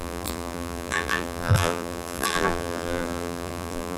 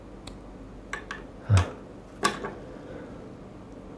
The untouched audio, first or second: second